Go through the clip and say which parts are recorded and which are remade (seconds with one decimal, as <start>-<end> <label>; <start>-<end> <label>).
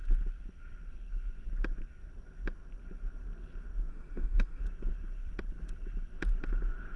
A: 0.0-3.9 recorded; 3.9-4.6 remade; 4.6-7.0 recorded